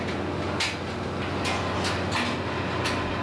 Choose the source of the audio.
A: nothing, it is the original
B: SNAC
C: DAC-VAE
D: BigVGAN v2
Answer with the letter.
A